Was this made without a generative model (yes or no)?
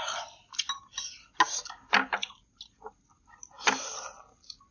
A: yes